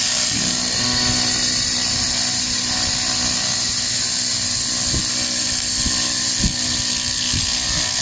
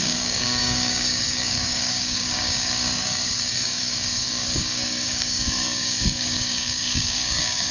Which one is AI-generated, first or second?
second